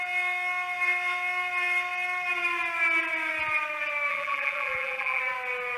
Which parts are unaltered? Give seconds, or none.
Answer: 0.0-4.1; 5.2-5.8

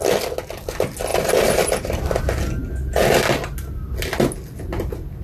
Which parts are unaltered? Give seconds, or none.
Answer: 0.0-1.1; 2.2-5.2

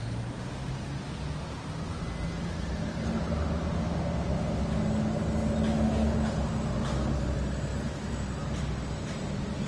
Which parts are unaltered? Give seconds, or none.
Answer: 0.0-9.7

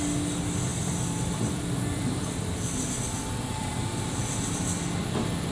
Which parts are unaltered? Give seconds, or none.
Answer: 0.0-0.7; 4.0-5.5

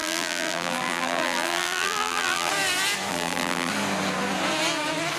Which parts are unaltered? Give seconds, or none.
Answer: 2.5-3.1; 3.7-5.2

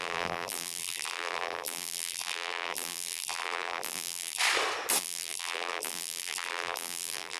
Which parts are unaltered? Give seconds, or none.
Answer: 4.4-5.0

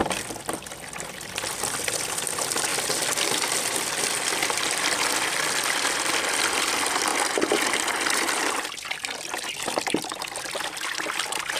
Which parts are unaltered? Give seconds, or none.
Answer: 0.0-7.1; 10.3-11.6